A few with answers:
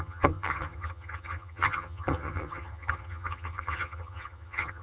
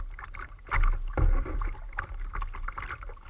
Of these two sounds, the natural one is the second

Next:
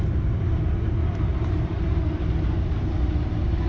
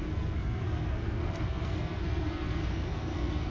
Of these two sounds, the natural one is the first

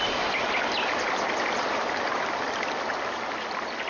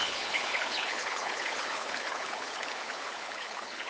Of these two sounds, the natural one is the first